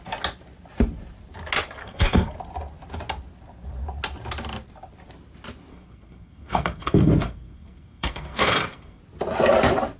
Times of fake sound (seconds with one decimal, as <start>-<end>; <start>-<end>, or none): 1.8-2.3; 5.7-9.0